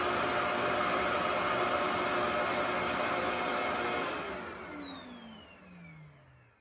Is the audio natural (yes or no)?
yes